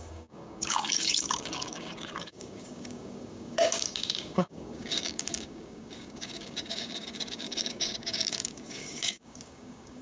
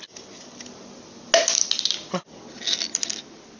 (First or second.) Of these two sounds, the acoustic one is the second